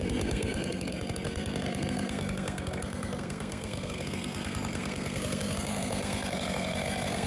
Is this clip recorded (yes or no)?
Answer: no